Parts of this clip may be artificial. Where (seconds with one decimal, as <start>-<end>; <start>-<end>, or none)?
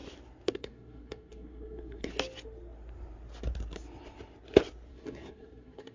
0.5-2.1; 4.9-5.9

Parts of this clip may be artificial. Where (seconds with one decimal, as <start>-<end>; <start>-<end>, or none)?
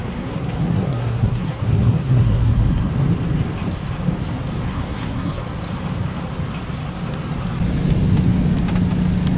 0.0-2.9; 4.7-5.4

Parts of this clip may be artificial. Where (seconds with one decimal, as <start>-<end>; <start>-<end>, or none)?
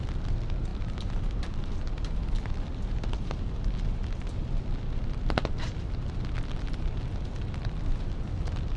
none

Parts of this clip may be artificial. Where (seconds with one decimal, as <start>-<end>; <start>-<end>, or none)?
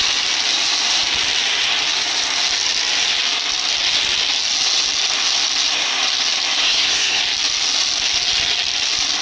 6.6-7.2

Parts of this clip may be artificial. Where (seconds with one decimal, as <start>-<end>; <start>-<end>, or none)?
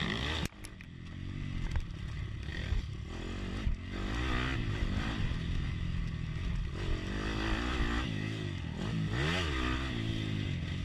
none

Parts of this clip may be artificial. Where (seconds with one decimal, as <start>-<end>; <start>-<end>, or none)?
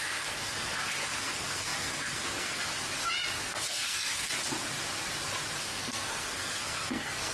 0.0-2.7; 3.4-4.3; 5.6-7.3